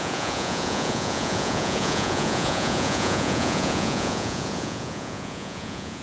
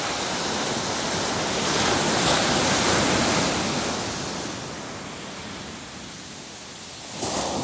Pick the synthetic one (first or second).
first